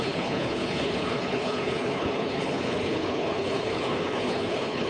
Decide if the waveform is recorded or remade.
remade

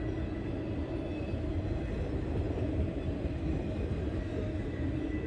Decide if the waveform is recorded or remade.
recorded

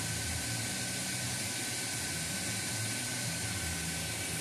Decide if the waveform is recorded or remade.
recorded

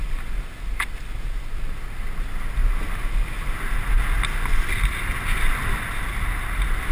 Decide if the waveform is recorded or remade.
recorded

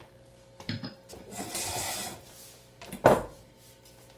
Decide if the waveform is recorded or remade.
recorded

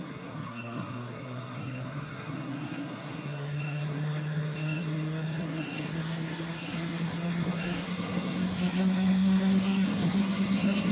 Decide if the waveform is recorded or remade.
remade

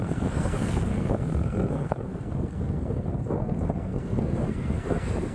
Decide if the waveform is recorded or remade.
remade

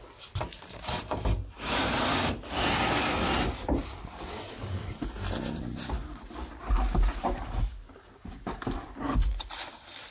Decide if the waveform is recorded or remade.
recorded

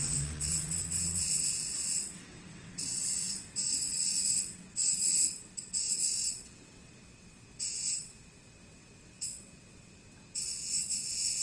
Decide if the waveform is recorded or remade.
remade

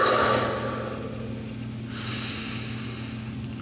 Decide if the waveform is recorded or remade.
recorded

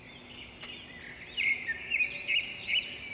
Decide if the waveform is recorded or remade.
recorded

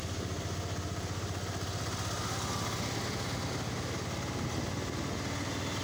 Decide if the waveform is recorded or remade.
recorded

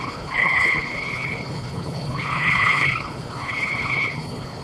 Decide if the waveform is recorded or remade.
remade